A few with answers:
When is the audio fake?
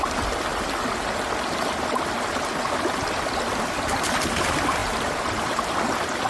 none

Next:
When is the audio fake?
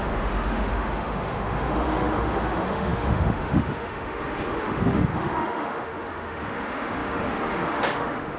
0.0-8.4 (autoencoder, DAC-VAE)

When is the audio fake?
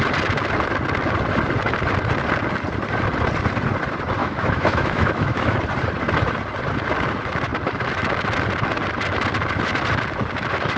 4.2-5.5 (autoencoder, DAC-VAE)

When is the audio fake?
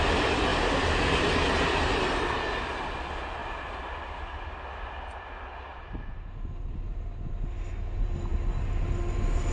none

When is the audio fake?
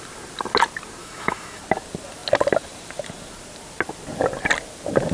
1.0-1.6 (autoencoder, DAC-VAE)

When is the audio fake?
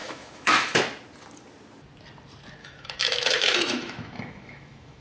0.0-0.8 (autoencoder, DAC-VAE); 2.6-5.0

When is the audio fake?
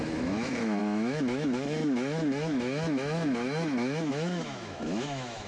0.0-5.5 (autoencoder, DAC-VAE)